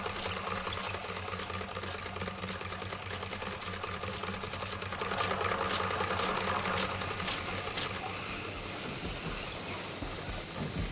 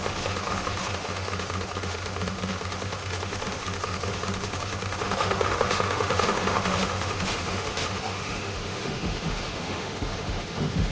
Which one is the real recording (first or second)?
first